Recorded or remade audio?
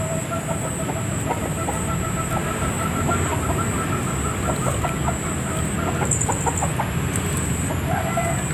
recorded